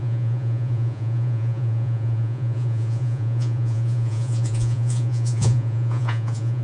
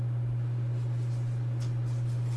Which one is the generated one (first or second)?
first